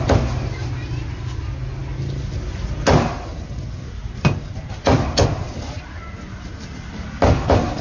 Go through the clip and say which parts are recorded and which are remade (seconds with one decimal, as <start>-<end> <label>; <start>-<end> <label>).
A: 0.0-7.8 recorded